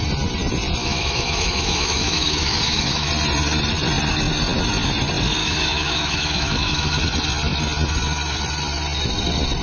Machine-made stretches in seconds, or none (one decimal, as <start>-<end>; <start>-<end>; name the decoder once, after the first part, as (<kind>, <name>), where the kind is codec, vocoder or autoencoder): 0.8-3.1 (autoencoder, DAC-VAE); 5.4-7.0